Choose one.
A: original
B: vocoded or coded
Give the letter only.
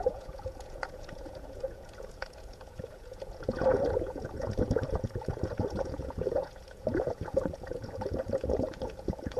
B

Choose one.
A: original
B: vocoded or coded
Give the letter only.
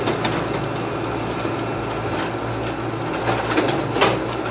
A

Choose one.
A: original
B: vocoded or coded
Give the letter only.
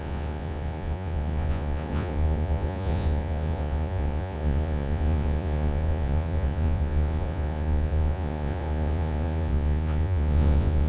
B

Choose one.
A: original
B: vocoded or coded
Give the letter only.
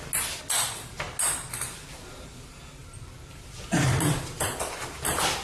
A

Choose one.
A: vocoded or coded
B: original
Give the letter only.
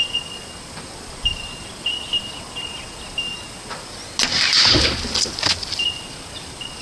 B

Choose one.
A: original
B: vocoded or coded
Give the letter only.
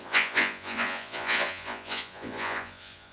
B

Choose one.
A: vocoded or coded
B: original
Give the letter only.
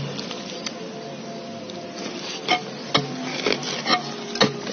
B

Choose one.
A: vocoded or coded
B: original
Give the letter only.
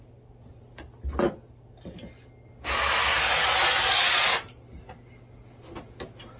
B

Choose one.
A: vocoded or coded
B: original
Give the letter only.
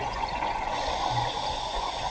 A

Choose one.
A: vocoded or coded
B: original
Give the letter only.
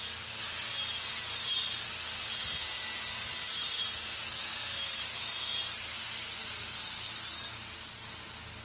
B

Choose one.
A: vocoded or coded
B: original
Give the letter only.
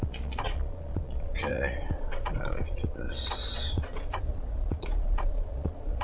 A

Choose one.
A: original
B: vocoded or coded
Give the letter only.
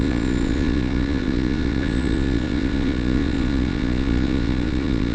B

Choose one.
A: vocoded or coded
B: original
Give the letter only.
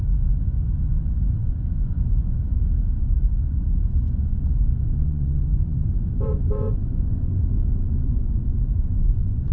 A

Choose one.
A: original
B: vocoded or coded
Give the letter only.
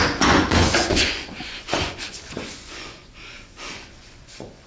B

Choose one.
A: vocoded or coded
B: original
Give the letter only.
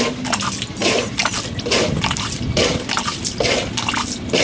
B